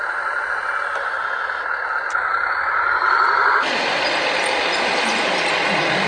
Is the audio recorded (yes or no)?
yes